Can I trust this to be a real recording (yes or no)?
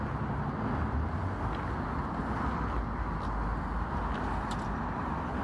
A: yes